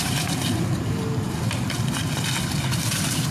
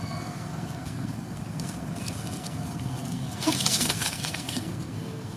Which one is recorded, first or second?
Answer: first